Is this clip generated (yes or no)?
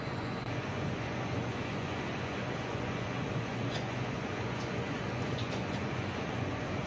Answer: yes